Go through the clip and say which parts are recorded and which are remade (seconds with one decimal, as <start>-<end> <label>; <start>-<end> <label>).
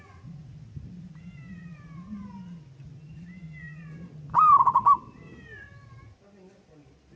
0.0-7.2 recorded